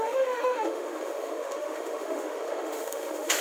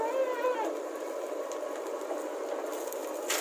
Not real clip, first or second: first